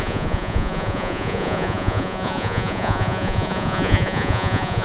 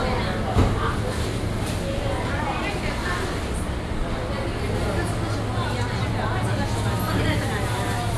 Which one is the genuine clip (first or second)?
second